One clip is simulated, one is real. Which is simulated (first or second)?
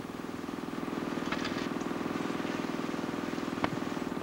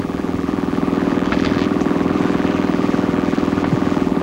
second